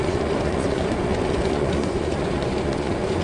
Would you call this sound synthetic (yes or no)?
yes